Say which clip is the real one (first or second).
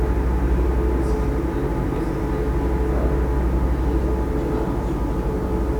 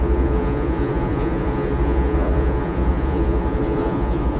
first